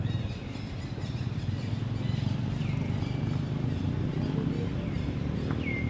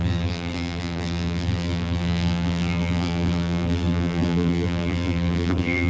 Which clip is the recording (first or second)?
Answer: first